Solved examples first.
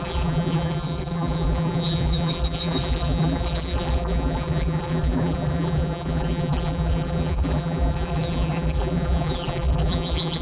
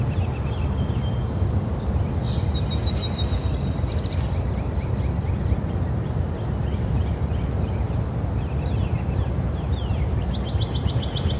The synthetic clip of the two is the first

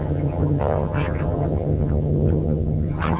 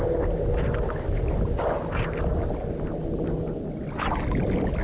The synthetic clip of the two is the first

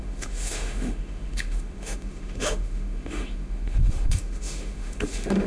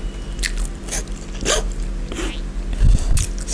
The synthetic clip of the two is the first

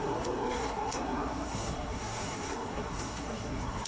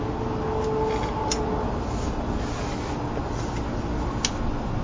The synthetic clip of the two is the first